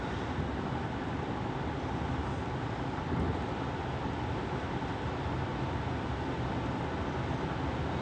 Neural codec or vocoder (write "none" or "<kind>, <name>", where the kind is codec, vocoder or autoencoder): none